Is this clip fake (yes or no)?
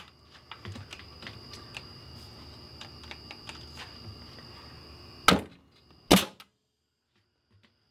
no